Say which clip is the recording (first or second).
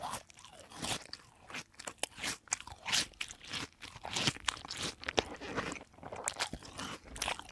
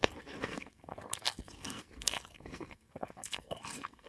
first